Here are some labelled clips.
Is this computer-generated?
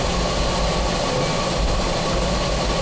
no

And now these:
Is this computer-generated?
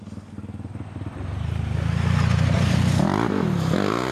no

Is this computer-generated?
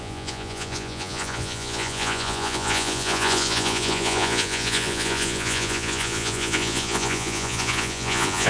yes